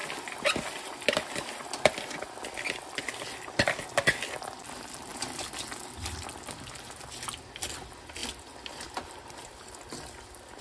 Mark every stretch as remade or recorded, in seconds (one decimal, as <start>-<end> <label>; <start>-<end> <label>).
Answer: 0.0-3.0 remade; 3.0-8.2 recorded; 8.2-9.7 remade; 9.7-10.6 recorded